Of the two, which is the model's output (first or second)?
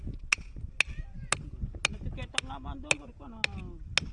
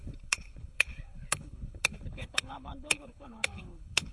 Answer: second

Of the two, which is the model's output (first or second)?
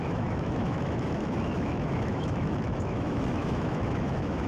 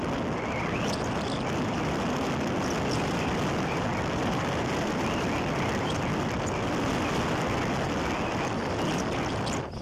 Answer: first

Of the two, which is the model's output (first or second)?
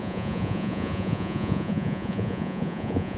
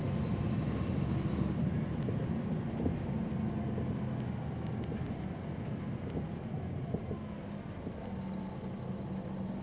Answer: first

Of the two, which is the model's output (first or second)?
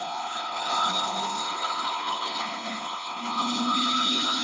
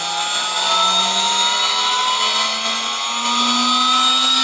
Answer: first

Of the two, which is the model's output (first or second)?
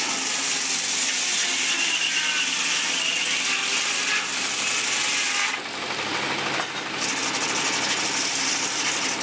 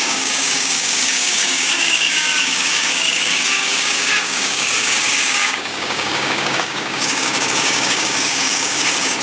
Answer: second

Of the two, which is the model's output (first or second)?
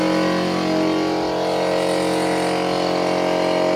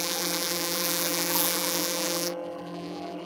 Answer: second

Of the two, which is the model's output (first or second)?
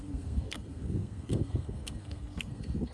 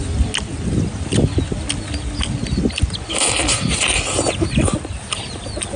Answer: first